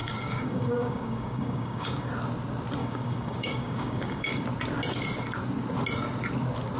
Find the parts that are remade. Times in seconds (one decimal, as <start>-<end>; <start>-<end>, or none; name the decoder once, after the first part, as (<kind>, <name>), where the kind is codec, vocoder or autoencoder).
0.0-2.1 (codec, DAC); 2.8-4.3